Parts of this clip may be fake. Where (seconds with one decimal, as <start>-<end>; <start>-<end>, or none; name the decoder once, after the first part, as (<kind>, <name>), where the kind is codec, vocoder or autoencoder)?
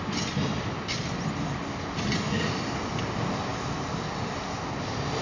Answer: none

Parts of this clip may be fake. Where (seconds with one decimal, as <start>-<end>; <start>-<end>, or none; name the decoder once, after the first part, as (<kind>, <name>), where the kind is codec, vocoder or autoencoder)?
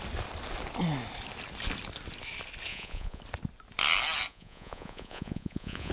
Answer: 2.7-3.2 (vocoder, Vocos); 4.3-5.9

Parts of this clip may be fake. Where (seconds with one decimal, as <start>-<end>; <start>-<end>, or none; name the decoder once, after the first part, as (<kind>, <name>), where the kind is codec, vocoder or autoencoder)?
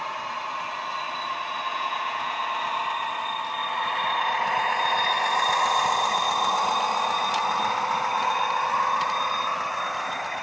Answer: 1.7-2.4 (vocoder, Vocos)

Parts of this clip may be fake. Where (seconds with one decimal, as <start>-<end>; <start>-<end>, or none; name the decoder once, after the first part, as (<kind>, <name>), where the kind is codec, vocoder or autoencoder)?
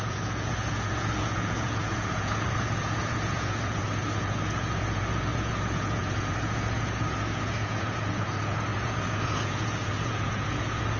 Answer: 0.0-11.0 (vocoder, Vocos)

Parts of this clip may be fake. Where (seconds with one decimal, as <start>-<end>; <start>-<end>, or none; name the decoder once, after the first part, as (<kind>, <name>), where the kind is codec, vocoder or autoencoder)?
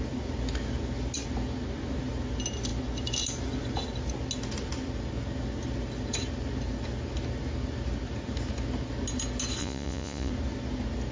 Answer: 9.6-10.3 (vocoder, Vocos)